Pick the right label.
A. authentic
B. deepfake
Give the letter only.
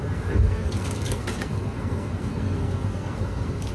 B